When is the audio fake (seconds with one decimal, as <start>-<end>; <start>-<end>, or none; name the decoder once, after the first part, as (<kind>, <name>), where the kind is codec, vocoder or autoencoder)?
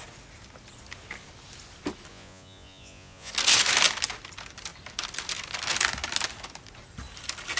2.1-3.3 (vocoder, Vocos)